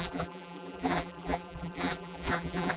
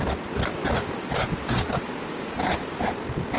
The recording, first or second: second